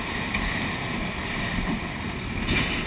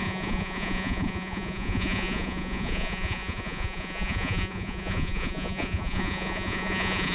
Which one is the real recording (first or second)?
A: first